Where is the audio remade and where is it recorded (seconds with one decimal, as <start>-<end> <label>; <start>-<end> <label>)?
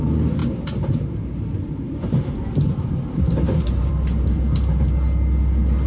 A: 0.0-0.4 recorded; 0.4-3.9 remade; 3.9-5.9 recorded